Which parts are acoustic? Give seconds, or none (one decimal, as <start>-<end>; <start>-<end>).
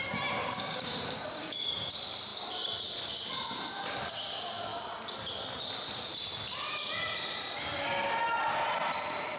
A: 0.0-0.4; 1.7-9.4